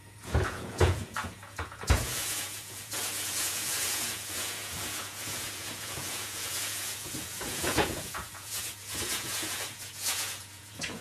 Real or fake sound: fake